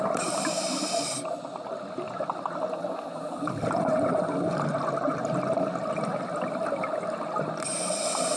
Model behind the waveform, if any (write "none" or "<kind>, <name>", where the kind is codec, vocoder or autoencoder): none